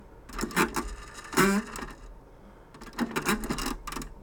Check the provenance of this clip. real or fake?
real